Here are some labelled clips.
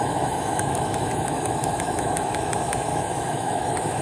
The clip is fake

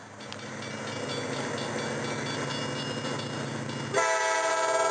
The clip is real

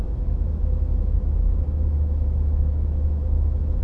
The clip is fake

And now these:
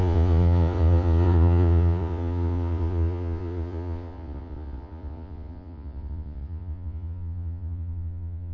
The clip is fake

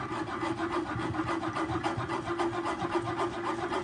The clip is real